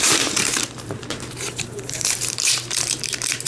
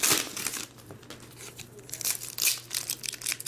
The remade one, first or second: first